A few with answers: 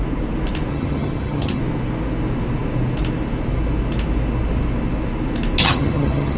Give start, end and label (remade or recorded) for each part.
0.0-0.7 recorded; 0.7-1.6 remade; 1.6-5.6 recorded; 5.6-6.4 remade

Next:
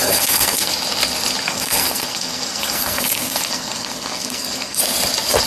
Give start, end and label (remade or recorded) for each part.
0.0-0.7 remade; 0.7-1.5 recorded; 1.5-4.8 remade; 4.8-5.5 recorded

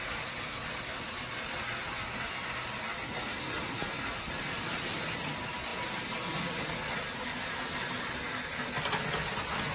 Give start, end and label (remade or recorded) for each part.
0.0-9.7 recorded

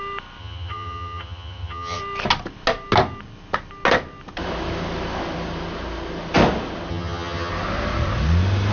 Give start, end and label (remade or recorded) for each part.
0.0-0.4 recorded; 0.4-2.0 remade; 2.0-6.9 recorded; 6.9-7.5 remade; 7.5-8.7 recorded

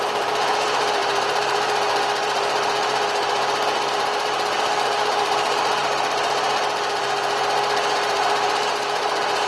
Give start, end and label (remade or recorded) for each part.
0.0-5.8 remade; 5.8-7.9 recorded; 7.9-9.5 remade

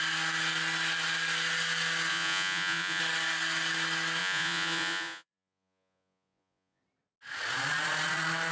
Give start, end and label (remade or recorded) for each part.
0.0-2.1 recorded; 2.1-3.0 remade; 3.0-4.2 recorded; 4.2-6.8 remade; 6.8-8.5 recorded